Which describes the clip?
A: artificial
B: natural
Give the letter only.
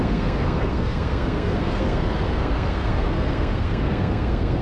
A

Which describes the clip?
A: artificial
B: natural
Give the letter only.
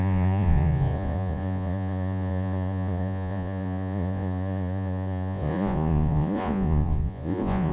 A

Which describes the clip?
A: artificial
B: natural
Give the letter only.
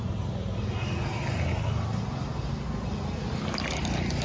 B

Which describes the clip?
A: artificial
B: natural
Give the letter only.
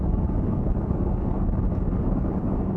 A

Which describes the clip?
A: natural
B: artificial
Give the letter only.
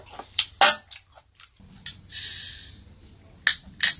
A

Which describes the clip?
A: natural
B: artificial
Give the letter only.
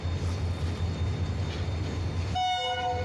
A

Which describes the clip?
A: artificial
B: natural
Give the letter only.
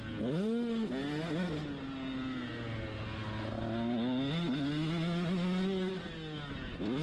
B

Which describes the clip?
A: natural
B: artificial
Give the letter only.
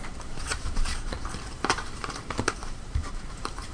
B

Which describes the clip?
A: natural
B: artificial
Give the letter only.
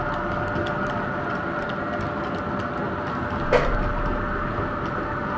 A